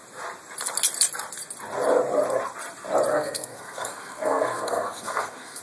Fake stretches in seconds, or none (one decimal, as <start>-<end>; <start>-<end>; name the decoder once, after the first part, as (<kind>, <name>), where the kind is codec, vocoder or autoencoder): 3.1-5.6 (codec, SNAC)